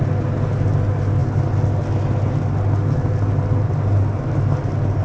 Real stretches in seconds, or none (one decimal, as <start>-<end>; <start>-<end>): 0.0-5.0